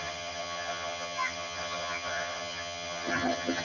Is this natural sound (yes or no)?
no